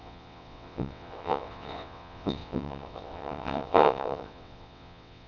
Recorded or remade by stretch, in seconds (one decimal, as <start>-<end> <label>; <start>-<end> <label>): 0.0-5.3 remade